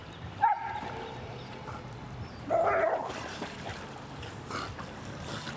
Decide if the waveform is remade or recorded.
remade